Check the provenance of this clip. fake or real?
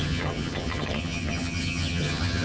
fake